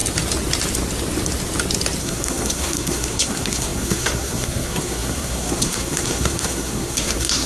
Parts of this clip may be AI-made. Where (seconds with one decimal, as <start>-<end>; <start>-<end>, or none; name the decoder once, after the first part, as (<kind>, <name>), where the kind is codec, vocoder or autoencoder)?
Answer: 2.0-7.5 (codec, SNAC)